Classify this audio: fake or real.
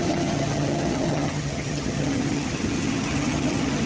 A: fake